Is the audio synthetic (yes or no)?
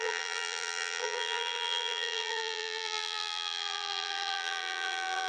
yes